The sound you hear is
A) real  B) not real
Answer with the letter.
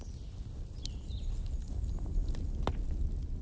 A